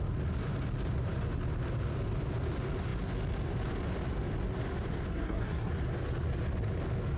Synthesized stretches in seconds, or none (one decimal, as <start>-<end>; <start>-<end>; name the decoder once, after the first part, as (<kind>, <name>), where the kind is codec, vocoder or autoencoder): 5.1-5.7 (codec, SNAC)